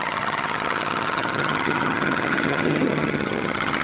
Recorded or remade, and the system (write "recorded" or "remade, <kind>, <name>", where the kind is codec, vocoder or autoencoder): remade, vocoder, HiFi-GAN